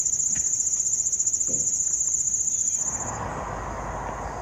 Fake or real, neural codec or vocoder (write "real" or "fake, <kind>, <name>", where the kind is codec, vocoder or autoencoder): real